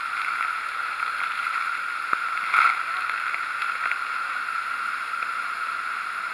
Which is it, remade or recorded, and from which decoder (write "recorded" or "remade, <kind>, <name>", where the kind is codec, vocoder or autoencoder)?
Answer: recorded